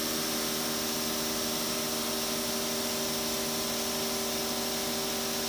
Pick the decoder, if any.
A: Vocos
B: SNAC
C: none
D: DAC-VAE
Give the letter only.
C